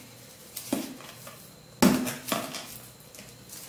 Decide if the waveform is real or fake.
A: real